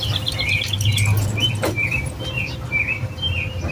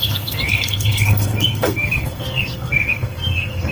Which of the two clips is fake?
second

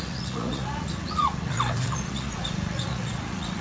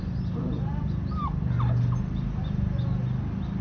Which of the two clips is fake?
first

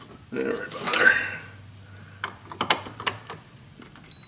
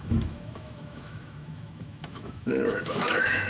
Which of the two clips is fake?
second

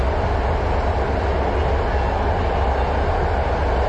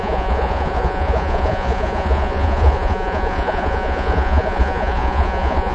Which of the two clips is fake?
second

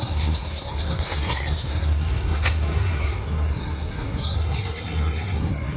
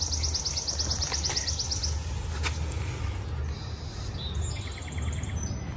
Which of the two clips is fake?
first